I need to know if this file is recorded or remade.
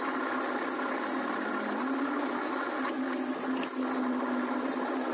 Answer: recorded